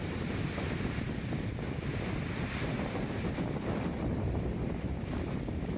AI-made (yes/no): yes